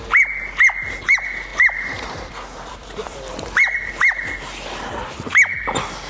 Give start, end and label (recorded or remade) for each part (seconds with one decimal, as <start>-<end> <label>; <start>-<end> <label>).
0.0-1.5 recorded; 1.5-3.3 remade; 3.3-6.1 recorded